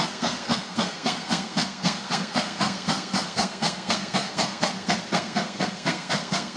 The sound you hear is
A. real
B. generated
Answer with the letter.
B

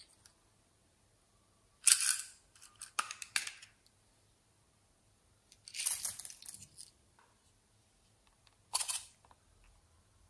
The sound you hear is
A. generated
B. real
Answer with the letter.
B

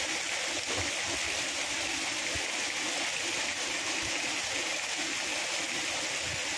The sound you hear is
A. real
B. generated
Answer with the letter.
A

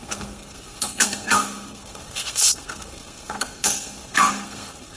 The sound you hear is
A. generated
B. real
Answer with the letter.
A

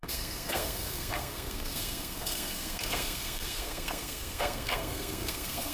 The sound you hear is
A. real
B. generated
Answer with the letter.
B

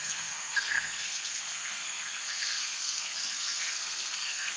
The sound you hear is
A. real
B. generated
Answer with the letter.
B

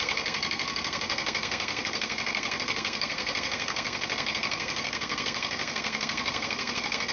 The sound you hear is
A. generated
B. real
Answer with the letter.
A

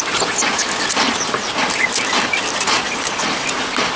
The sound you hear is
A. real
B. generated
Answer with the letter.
A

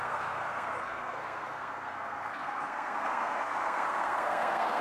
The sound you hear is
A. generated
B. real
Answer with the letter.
A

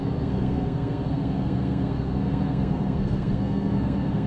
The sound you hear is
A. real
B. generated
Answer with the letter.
B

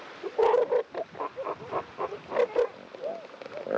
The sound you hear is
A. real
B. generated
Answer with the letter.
A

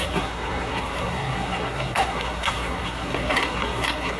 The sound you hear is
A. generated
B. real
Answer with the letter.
A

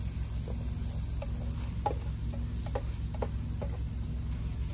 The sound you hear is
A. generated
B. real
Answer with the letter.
B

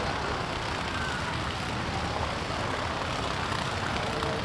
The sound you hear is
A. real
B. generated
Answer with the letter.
A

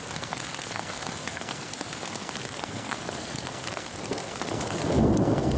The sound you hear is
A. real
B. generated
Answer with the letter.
B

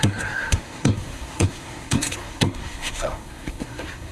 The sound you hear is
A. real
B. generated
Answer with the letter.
B